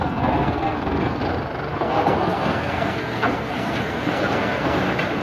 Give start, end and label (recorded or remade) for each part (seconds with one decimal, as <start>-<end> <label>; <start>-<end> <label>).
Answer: 0.0-1.2 remade; 1.2-1.7 recorded; 1.7-4.8 remade; 4.8-5.2 recorded